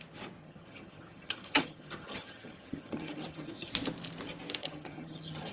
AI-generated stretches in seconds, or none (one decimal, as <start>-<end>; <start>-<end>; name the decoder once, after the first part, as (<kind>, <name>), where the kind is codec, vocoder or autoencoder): 0.4-3.7 (vocoder, HiFi-GAN); 4.6-5.5